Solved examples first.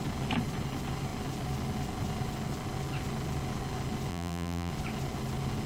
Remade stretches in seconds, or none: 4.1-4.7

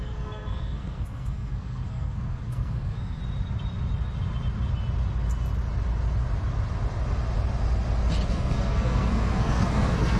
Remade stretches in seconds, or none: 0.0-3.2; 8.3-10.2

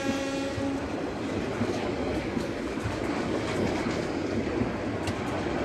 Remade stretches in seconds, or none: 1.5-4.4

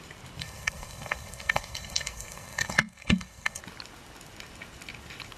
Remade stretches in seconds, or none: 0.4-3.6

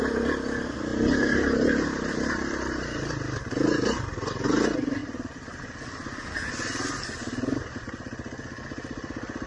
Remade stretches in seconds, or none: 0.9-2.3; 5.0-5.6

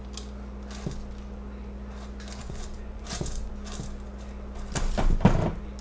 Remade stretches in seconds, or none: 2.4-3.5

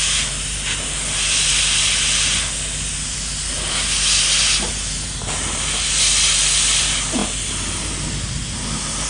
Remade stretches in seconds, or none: none